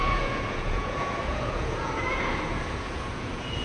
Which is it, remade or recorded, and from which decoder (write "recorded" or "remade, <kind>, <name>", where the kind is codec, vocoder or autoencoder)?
remade, vocoder, Vocos